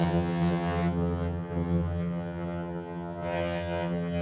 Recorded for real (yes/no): no